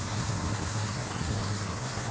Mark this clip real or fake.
fake